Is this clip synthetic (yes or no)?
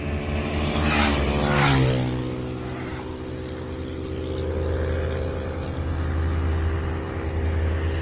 no